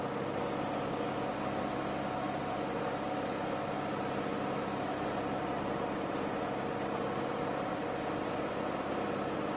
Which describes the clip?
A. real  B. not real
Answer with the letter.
A